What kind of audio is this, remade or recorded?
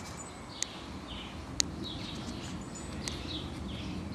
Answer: recorded